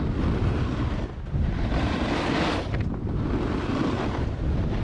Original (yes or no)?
yes